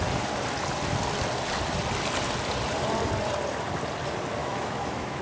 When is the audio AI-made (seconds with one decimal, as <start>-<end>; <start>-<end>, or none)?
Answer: 4.4-5.2